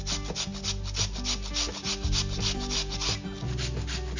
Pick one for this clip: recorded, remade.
recorded